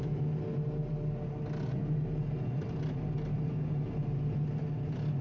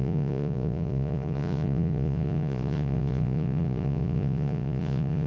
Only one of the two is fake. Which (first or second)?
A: second